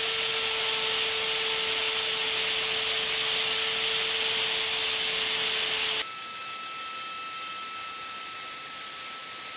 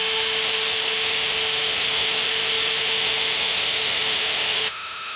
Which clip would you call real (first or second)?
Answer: first